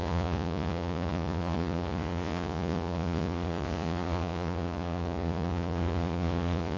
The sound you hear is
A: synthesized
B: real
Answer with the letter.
A